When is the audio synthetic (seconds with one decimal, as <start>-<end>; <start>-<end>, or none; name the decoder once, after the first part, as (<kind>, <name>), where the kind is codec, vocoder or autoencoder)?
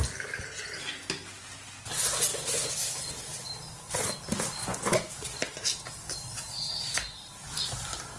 4.6-5.2 (vocoder, Vocos)